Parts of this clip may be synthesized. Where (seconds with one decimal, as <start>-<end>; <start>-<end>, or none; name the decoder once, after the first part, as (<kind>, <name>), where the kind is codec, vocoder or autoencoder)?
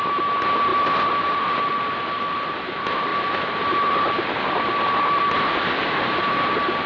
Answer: none